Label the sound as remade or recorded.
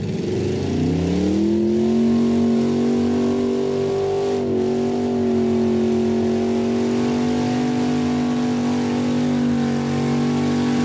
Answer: recorded